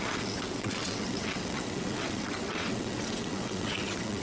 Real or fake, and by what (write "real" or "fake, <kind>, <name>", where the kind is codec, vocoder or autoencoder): fake, vocoder, WaveNeXt